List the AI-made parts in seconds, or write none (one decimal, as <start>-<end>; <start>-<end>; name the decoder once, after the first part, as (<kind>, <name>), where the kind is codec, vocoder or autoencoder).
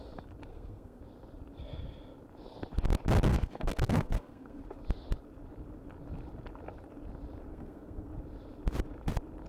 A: 0.5-1.0 (codec, SNAC); 3.3-4.6; 7.5-8.1